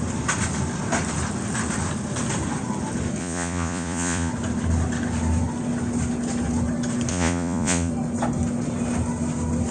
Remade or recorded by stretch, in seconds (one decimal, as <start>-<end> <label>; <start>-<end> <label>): 0.0-3.2 recorded; 3.2-4.3 remade; 4.3-7.1 recorded; 7.1-7.9 remade; 7.9-9.7 recorded